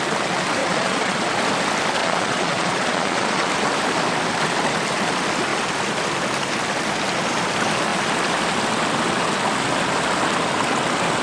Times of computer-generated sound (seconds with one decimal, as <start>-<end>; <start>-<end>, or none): 0.6-1.3; 2.0-3.5